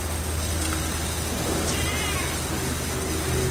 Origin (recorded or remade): recorded